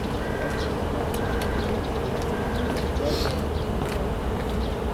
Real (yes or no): yes